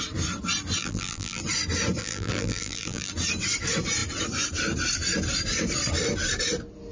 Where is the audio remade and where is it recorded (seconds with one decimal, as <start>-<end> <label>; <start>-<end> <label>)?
0.0-0.8 recorded; 0.8-1.4 remade; 1.4-2.0 recorded; 2.0-3.1 remade; 3.1-6.9 recorded